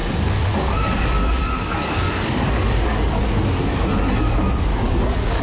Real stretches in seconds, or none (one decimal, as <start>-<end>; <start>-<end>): 3.2-4.7